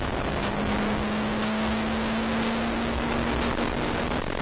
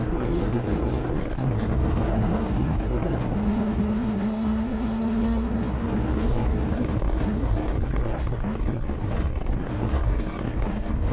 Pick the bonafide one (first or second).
first